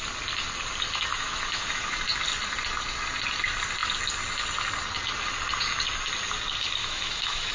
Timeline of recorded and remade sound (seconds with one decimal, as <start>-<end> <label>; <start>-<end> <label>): 0.0-1.1 recorded; 1.1-2.0 remade; 2.0-6.8 recorded; 6.8-7.5 remade